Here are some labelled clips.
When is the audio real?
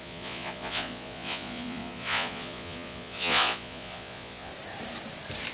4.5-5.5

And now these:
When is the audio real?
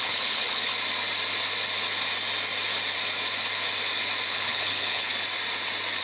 0.7-4.3; 5.1-6.0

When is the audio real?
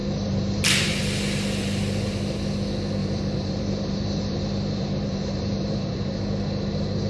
1.0-3.0; 6.2-7.1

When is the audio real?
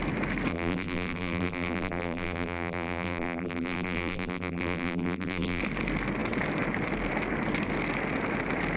0.0-0.5; 5.6-8.8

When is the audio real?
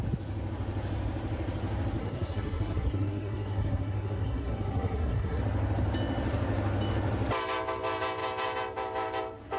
0.0-2.0; 5.4-9.6